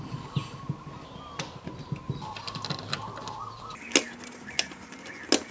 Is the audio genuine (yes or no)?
yes